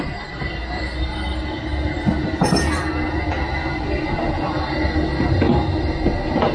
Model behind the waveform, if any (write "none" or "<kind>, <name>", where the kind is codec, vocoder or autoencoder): none